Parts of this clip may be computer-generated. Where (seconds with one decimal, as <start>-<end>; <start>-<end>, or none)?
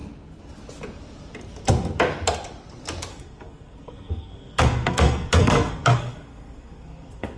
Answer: 3.1-7.4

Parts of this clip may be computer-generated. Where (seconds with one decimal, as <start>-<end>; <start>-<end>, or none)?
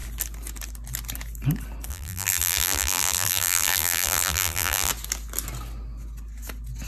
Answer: 1.9-4.9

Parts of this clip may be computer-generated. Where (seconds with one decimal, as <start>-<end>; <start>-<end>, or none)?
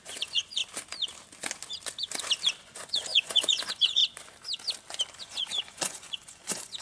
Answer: 0.0-0.6; 2.6-4.0; 5.2-6.8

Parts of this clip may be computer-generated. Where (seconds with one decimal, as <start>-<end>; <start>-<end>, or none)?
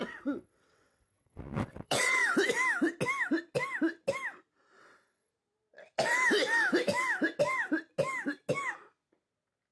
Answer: 0.0-2.2; 4.8-5.3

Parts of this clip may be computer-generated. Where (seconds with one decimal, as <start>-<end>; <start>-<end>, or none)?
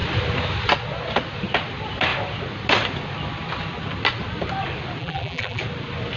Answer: 5.0-5.6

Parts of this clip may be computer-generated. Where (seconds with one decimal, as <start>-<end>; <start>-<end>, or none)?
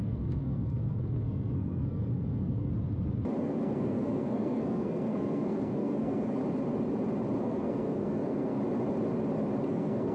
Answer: 0.0-2.7; 3.4-6.4; 7.4-8.6; 9.7-10.1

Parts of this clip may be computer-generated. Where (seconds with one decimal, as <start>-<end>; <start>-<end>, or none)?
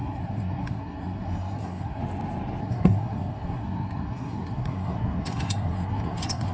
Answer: 0.0-2.0; 2.6-6.5